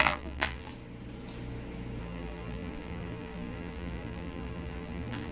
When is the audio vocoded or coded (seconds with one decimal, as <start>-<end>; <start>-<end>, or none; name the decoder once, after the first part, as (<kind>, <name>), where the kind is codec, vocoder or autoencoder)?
0.0-0.7 (vocoder, BigVGAN v2); 2.0-5.3